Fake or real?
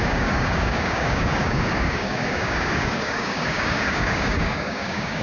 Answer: fake